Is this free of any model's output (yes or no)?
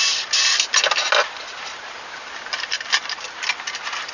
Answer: yes